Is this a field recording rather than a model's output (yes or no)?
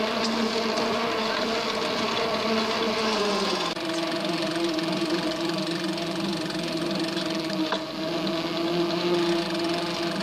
yes